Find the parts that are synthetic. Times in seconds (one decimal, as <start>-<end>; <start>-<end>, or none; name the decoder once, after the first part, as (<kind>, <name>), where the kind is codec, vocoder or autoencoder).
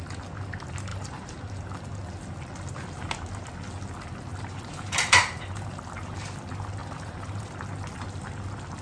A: 0.9-1.6 (vocoder, BigVGAN v2); 4.3-5.8; 6.8-7.5